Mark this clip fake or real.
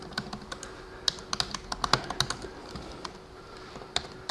real